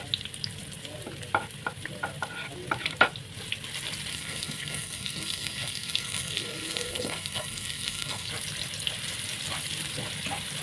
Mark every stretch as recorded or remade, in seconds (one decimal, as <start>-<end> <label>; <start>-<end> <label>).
0.0-4.1 recorded; 4.1-8.3 remade; 8.3-10.6 recorded